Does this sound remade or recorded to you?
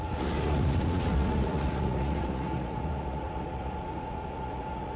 remade